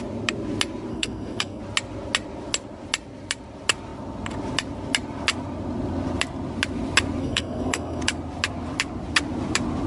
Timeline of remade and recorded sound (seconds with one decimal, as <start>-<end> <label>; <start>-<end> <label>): 0.0-0.9 recorded; 0.9-1.6 remade; 1.6-7.2 recorded; 7.2-8.0 remade; 8.0-9.9 recorded